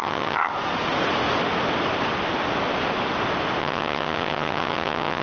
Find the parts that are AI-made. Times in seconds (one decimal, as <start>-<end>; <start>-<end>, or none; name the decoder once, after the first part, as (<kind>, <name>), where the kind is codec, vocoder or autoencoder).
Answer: 0.0-0.5 (vocoder, HiFi-GAN); 3.6-5.2